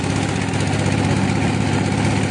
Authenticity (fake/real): real